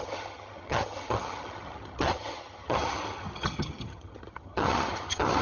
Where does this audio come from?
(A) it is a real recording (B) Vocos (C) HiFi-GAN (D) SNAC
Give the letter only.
C